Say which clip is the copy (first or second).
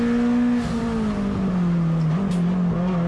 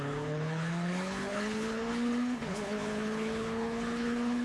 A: second